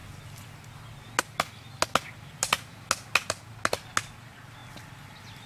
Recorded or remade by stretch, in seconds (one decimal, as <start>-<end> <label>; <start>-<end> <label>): 0.0-5.5 recorded